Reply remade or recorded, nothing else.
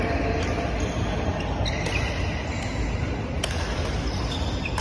recorded